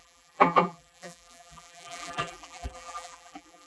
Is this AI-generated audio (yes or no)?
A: yes